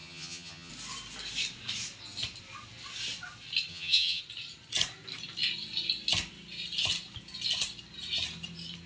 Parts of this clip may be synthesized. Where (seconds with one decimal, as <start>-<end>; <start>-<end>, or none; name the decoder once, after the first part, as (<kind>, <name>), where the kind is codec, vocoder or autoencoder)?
0.0-0.7 (vocoder, HiFi-GAN); 3.7-4.2